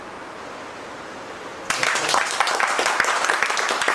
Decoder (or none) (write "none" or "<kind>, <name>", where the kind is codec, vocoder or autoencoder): none